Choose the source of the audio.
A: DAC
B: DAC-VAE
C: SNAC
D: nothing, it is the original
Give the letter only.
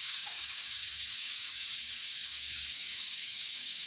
A